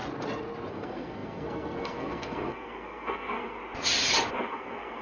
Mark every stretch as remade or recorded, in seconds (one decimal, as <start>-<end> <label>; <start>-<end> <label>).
0.0-0.7 recorded; 0.7-3.6 remade; 3.6-4.3 recorded; 4.3-5.0 remade